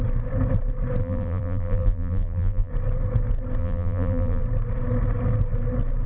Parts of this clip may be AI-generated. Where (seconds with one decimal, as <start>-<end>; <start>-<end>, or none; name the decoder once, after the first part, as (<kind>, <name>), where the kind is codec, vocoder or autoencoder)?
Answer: 1.0-2.7 (vocoder, BigVGAN v2); 3.6-4.4